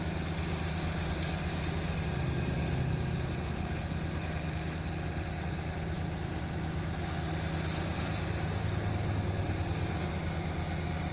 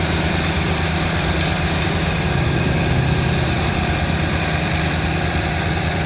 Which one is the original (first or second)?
first